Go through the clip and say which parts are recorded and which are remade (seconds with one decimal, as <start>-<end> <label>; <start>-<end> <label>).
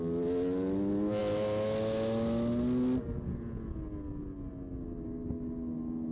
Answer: 0.0-6.1 recorded